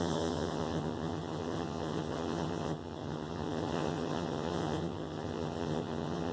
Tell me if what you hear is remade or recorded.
remade